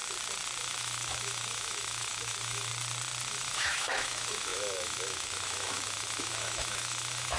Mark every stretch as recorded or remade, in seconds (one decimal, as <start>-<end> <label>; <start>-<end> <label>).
0.0-0.6 recorded; 0.6-2.7 remade; 2.7-3.3 recorded; 3.3-7.4 remade